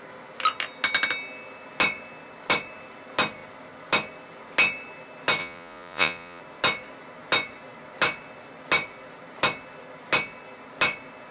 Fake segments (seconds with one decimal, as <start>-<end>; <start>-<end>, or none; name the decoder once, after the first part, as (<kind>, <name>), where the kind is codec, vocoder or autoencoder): 5.4-6.4 (vocoder, Vocos)